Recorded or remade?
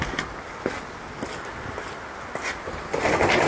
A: remade